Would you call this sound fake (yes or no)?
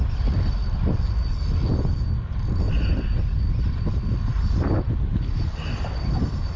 no